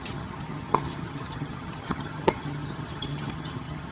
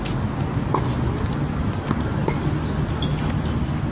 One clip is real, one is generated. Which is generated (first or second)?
first